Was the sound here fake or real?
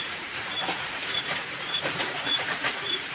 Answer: fake